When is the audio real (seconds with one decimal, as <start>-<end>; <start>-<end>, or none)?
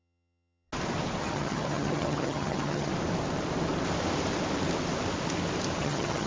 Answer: 0.7-1.2; 2.9-5.8